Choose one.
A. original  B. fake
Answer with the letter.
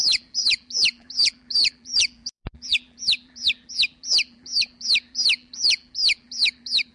B